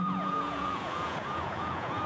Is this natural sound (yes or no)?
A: no